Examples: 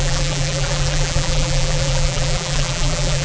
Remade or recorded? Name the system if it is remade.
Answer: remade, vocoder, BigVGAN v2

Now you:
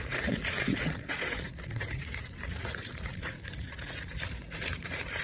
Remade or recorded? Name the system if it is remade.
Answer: remade, vocoder, Vocos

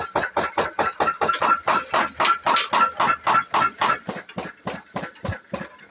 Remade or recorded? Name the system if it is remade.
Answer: recorded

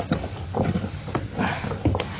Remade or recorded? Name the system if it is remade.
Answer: recorded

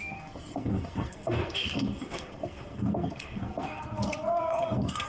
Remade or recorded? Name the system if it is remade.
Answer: remade, codec, SNAC